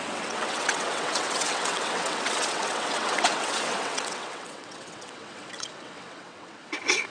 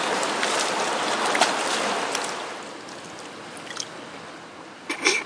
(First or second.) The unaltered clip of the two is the second